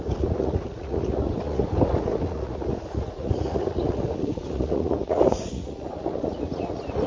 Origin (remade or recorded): remade